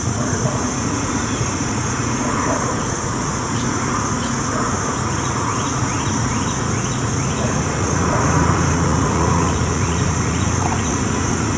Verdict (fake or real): fake